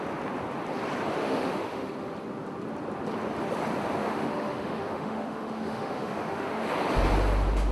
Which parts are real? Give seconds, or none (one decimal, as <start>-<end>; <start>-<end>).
0.0-1.1; 1.9-4.0; 6.7-7.7